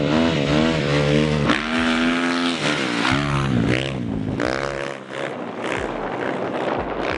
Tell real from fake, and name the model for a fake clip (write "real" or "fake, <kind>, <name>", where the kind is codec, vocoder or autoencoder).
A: real